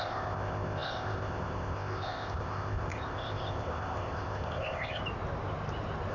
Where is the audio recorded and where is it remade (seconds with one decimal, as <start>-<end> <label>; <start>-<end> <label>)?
0.0-5.0 remade; 5.0-6.1 recorded